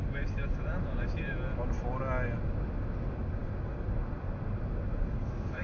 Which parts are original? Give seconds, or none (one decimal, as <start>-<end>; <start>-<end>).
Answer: 0.0-5.6

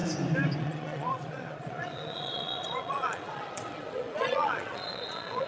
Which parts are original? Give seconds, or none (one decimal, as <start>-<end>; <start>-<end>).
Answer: 0.0-0.6